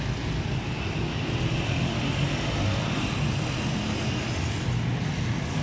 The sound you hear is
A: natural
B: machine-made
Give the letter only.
A